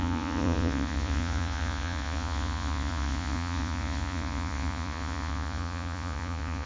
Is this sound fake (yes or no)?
yes